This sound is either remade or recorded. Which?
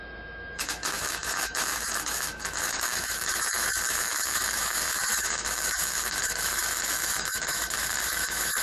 remade